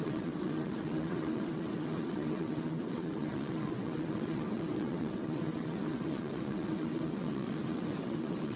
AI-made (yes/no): yes